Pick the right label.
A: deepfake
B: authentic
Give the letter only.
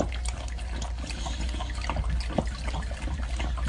B